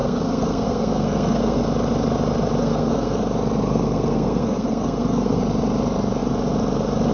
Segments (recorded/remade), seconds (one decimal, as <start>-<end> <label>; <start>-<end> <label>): 0.0-1.6 remade; 1.6-2.6 recorded; 2.6-3.2 remade; 3.2-3.7 recorded; 3.7-5.4 remade; 5.4-7.1 recorded

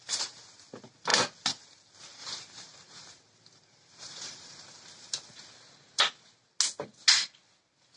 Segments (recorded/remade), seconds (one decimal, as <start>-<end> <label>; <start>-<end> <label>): 0.0-2.2 recorded; 2.2-6.0 remade; 6.0-8.0 recorded

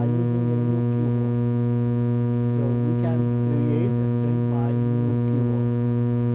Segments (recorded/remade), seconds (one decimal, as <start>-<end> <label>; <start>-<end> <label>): 0.0-0.7 remade; 0.7-3.2 recorded; 3.2-3.9 remade; 3.9-5.1 recorded; 5.1-6.3 remade

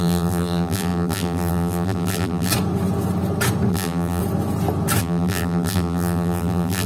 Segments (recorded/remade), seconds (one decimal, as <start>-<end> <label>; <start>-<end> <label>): 0.0-2.5 remade; 2.5-3.7 recorded; 3.7-4.2 remade; 4.2-5.0 recorded; 5.0-6.9 remade